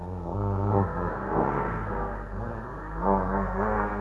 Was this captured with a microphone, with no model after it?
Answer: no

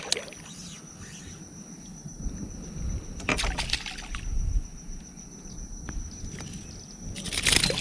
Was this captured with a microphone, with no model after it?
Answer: yes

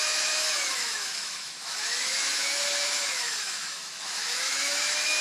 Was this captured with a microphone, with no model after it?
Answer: no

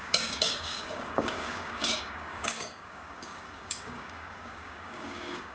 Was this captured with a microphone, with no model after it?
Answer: no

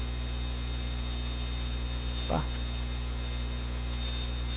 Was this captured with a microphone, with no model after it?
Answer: yes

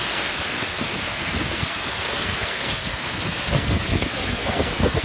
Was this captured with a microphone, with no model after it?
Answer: no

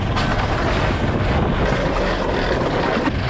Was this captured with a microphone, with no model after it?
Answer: yes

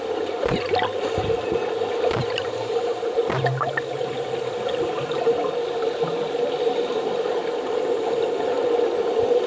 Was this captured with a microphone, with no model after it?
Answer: yes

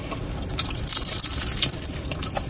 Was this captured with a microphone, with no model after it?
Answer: no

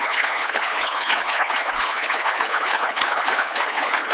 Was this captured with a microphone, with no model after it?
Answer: no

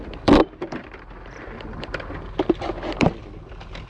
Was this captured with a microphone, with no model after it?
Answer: no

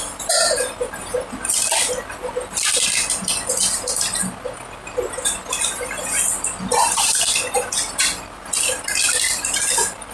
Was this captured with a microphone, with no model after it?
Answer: yes